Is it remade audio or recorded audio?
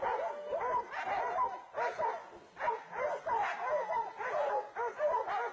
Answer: recorded